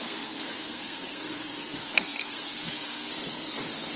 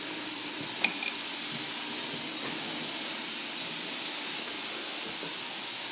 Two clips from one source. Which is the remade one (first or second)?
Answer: first